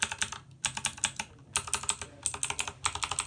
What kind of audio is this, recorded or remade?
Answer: recorded